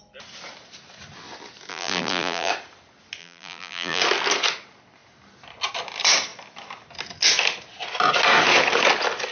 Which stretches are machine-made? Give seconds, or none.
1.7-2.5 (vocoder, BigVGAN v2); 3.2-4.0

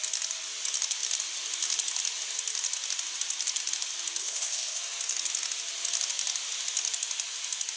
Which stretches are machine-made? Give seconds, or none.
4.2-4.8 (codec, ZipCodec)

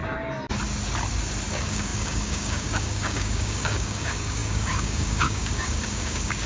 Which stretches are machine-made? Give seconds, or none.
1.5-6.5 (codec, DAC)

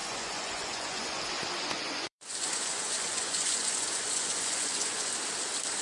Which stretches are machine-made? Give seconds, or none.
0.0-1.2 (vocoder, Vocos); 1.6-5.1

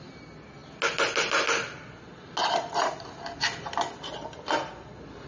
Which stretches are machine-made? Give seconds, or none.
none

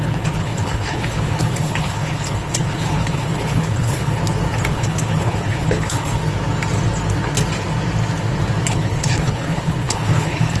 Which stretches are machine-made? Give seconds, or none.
0.0-4.2 (codec, HILCodec); 4.7-6.2; 8.7-10.6